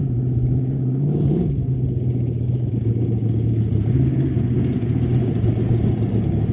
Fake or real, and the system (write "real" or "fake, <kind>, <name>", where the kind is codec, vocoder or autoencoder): fake, codec, DAC